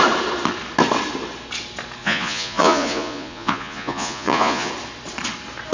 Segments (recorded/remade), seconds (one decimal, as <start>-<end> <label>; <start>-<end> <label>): 0.0-2.0 recorded; 2.0-4.7 remade; 4.7-5.7 recorded